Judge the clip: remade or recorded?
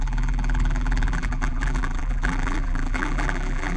remade